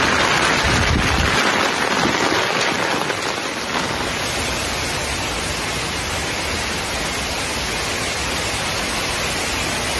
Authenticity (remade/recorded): recorded